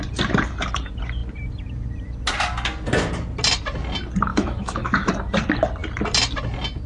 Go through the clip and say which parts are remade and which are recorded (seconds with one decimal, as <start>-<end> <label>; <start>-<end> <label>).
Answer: 0.0-4.3 recorded; 4.3-5.1 remade; 5.1-6.9 recorded